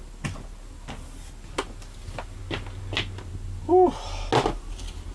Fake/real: real